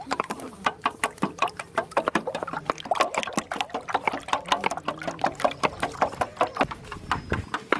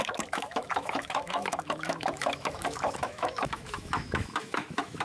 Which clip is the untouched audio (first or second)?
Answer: first